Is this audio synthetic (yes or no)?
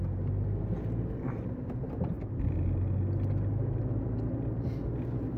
no